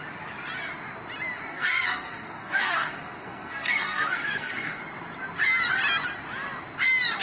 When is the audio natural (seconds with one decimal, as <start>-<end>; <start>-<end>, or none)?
0.0-1.5; 4.8-7.2

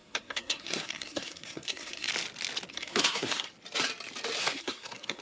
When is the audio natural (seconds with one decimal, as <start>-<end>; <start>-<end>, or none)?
2.1-2.7; 3.5-4.4

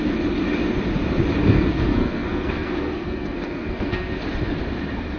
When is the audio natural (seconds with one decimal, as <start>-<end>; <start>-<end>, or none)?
0.0-1.4; 4.2-5.2

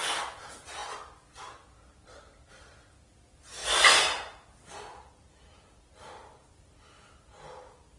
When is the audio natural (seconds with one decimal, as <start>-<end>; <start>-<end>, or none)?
0.0-8.0

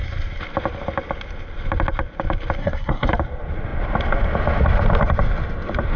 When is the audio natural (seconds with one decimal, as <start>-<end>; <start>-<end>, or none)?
0.0-2.6; 3.1-6.0

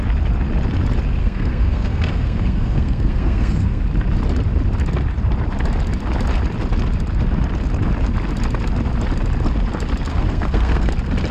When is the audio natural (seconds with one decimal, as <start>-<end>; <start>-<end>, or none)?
0.0-1.2; 3.8-10.1; 10.9-11.3

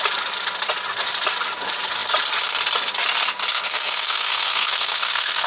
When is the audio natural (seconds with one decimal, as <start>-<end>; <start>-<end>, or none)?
0.0-3.5

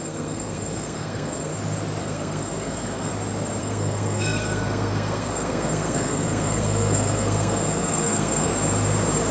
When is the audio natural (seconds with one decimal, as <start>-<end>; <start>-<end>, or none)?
1.5-2.0; 3.1-3.6; 8.5-9.3